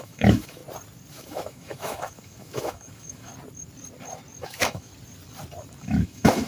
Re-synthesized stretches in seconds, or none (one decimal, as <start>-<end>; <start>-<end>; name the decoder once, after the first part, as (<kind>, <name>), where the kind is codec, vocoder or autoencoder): 0.0-0.6 (autoencoder, DAC-VAE); 1.1-3.3; 4.4-4.9; 5.8-6.5